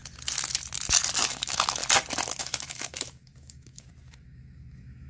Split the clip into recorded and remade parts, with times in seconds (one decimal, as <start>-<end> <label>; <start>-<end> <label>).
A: 0.0-1.3 recorded; 1.3-1.8 remade; 1.8-2.4 recorded; 2.4-5.1 remade